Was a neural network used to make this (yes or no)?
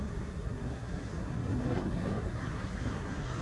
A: yes